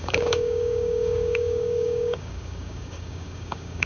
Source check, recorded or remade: remade